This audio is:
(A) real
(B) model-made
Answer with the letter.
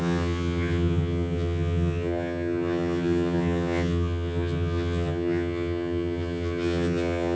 B